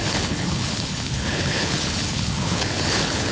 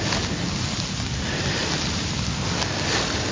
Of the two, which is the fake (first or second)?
first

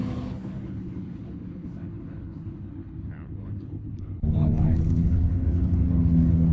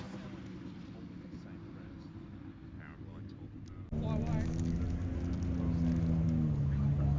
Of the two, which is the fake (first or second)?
first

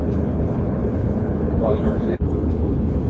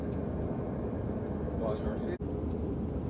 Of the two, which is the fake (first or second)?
first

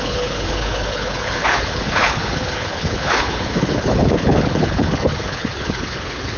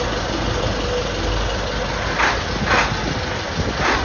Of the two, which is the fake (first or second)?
first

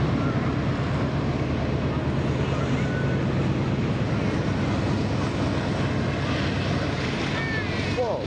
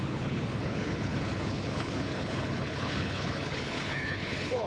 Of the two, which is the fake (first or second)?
second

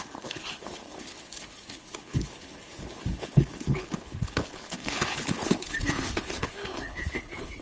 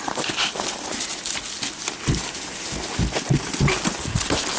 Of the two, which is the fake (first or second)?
first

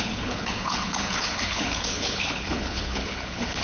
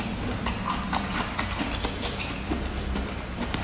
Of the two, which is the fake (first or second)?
first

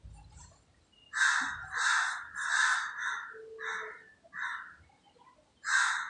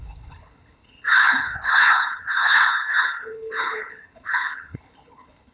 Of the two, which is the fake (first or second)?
second